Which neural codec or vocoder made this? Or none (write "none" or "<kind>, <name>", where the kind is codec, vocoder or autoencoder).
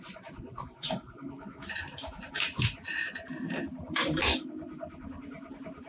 vocoder, BigVGAN v2